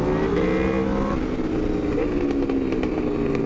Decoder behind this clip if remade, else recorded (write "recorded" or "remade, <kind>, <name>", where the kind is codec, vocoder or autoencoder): recorded